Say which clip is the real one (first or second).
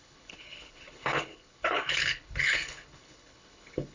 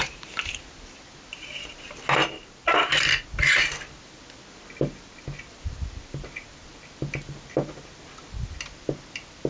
second